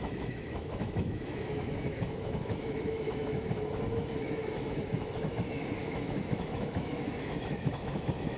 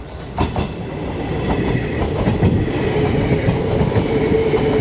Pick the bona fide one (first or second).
second